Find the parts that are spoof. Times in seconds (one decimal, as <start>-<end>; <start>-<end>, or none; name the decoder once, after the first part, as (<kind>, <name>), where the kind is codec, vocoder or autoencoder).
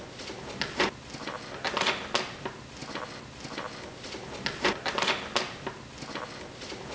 none